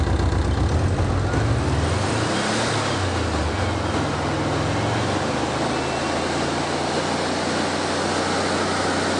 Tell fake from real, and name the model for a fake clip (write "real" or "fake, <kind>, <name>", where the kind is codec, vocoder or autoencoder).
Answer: real